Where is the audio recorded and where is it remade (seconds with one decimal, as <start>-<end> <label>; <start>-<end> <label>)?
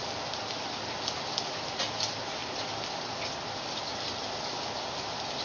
0.0-5.4 recorded